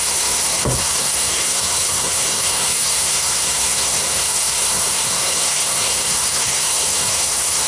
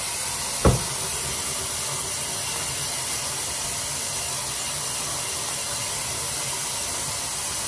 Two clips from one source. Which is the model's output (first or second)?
first